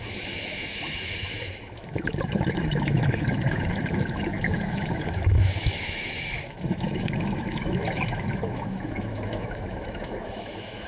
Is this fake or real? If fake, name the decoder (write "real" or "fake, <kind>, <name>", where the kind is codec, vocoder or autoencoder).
fake, autoencoder, DAC-VAE